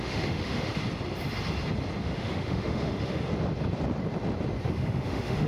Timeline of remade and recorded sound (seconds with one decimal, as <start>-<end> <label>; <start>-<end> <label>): 0.0-0.8 remade; 0.8-2.0 recorded; 2.0-3.3 remade; 3.3-4.7 recorded; 4.7-5.5 remade